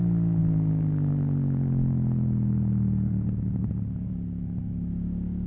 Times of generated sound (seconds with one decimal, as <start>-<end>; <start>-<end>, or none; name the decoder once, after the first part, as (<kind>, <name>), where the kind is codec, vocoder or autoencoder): 0.4-3.7 (vocoder, Vocos)